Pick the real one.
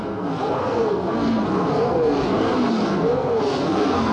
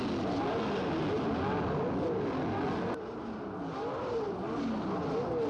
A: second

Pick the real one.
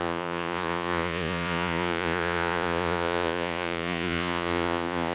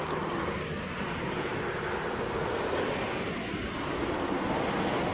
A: second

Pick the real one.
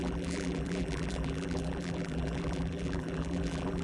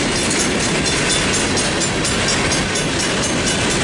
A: second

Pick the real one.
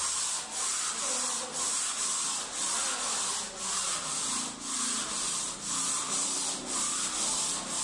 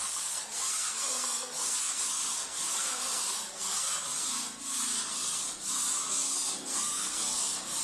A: first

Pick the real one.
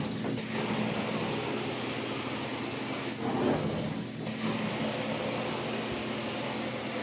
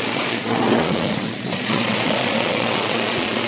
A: first